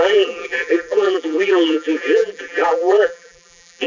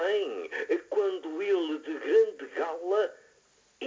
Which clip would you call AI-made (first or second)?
first